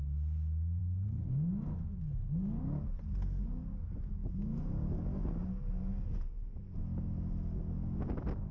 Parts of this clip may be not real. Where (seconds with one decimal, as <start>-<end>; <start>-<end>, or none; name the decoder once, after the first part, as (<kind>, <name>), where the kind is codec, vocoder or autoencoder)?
none